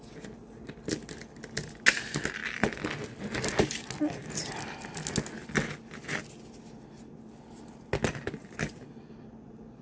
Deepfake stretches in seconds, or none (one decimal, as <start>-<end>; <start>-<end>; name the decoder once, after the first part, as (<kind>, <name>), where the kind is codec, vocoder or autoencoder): none